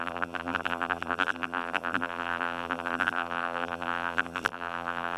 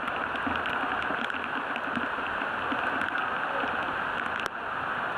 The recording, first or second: second